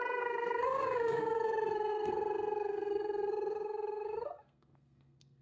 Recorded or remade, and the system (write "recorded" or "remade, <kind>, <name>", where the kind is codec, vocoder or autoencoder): remade, codec, SNAC